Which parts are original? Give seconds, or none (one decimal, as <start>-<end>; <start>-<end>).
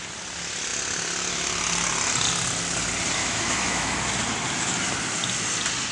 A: 0.0-3.2; 4.0-5.9